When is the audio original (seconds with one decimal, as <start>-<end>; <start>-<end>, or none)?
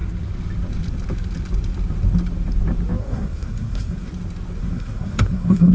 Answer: 0.0-3.0; 4.1-4.6